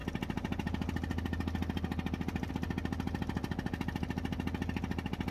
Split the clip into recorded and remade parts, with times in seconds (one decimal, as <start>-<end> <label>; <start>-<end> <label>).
0.0-5.3 recorded